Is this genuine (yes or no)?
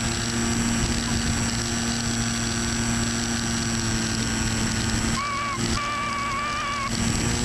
yes